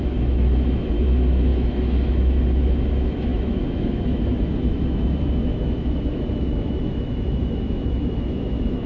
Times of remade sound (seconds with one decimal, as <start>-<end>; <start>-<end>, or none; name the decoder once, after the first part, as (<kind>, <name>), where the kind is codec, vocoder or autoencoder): 0.0-8.9 (autoencoder, DAC-VAE)

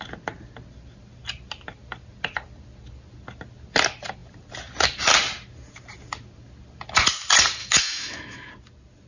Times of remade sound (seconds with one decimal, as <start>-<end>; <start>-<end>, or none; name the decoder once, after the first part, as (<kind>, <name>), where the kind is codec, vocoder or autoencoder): 7.6-8.5 (autoencoder, DAC-VAE)

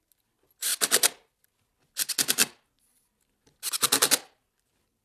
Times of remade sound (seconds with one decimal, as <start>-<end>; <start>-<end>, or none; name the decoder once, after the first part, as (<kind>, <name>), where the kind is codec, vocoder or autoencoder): none

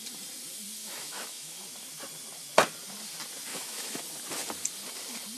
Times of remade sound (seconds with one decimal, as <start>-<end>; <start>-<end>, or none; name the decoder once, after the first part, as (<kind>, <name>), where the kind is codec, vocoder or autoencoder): 0.8-1.6 (autoencoder, DAC-VAE); 3.5-4.0

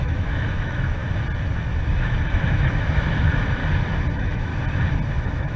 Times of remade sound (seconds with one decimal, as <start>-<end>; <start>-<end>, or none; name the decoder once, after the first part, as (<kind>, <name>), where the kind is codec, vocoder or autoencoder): 0.0-1.0 (autoencoder, DAC-VAE); 1.9-3.6; 4.1-4.5; 5.1-5.6

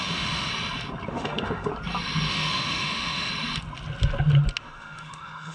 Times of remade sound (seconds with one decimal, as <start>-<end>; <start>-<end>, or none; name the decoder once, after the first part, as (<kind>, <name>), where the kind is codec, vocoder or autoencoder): 0.0-0.5 (autoencoder, DAC-VAE); 1.1-1.7; 2.3-3.3; 4.6-5.5

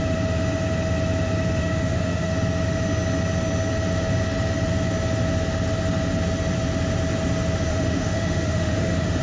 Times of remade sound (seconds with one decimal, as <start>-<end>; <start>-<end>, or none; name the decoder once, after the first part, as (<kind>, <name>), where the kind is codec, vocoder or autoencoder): 1.6-2.3 (autoencoder, DAC-VAE); 7.7-9.2

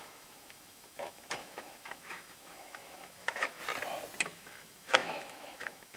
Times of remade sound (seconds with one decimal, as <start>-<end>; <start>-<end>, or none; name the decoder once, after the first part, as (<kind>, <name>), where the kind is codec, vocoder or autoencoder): 0.0-3.6 (autoencoder, DAC-VAE); 4.2-6.0